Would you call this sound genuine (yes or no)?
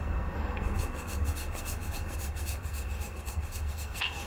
no